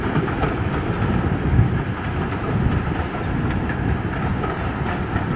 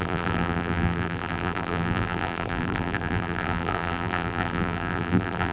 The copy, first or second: second